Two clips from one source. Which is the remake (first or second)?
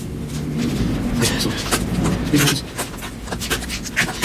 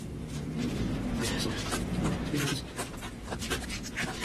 second